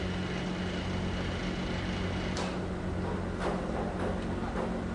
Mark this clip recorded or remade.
recorded